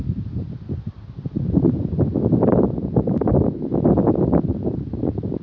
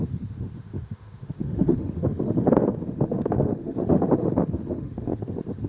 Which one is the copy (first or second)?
second